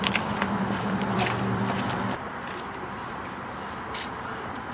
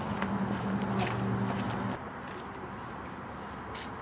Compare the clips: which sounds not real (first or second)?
first